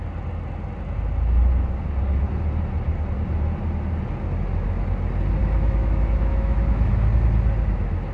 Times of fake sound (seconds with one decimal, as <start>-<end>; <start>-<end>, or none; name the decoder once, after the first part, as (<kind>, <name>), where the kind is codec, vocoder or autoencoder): 5.4-6.9 (autoencoder, DAC-VAE)